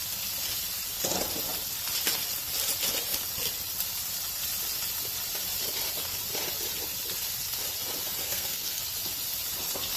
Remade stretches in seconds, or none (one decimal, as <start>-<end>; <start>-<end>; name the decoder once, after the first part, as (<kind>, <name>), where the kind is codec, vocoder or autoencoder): 8.2-8.8 (codec, SNAC)